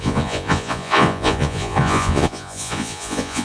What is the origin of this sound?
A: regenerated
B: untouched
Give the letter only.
A